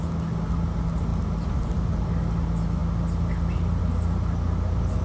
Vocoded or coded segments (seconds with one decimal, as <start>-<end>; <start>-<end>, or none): none

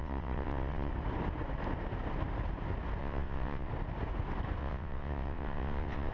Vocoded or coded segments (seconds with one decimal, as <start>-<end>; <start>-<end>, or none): 0.0-0.9; 3.0-3.7; 4.6-6.1